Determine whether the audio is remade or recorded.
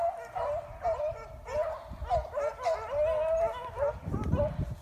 recorded